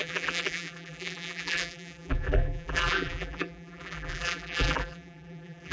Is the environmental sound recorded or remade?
remade